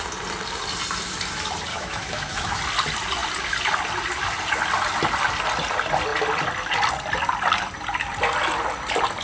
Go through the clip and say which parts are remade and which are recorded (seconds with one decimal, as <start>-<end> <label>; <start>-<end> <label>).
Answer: 0.0-1.7 recorded; 1.7-2.6 remade; 2.6-9.2 recorded

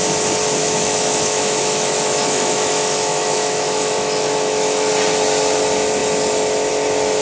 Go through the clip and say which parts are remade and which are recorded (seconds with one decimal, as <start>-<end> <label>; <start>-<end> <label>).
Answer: 0.0-0.6 recorded; 0.6-4.9 remade; 4.9-7.2 recorded

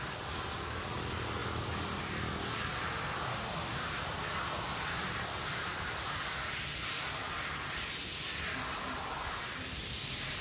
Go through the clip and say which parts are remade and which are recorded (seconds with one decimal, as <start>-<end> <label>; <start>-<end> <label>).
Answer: 0.0-3.3 recorded; 3.3-3.8 remade; 3.8-10.4 recorded